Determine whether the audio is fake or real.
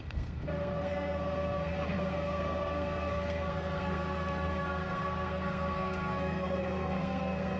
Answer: fake